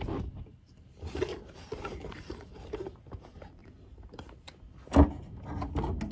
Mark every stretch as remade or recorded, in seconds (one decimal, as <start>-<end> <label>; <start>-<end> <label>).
0.0-0.5 recorded; 0.5-1.4 remade; 1.4-1.9 recorded; 1.9-2.5 remade; 2.5-3.6 recorded; 3.6-4.6 remade; 4.6-6.1 recorded